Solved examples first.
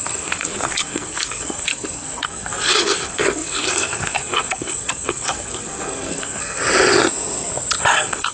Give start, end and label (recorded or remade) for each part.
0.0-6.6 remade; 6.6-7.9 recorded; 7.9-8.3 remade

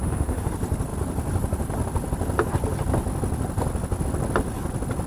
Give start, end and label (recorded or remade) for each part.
0.0-0.5 remade; 0.5-5.1 recorded

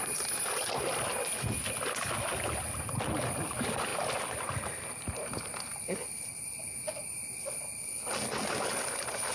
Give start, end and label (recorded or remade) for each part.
0.0-9.3 recorded

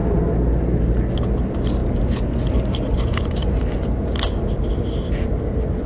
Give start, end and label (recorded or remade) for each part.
0.0-5.9 recorded

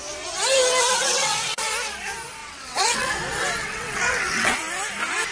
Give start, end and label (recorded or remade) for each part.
0.0-1.0 recorded; 1.0-1.6 remade; 1.6-2.4 recorded; 2.4-3.1 remade; 3.1-3.6 recorded; 3.6-4.6 remade; 4.6-5.3 recorded

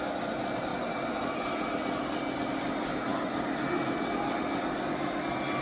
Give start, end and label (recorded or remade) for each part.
0.0-0.7 recorded; 0.7-1.5 remade; 1.5-5.6 recorded